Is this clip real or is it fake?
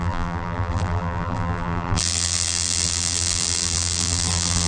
fake